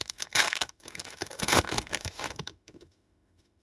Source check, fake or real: fake